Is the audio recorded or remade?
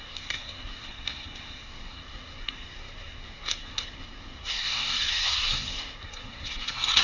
remade